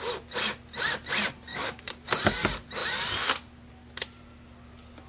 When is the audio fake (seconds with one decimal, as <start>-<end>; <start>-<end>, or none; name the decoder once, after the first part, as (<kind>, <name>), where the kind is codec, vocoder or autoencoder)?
1.5-2.0 (codec, DAC)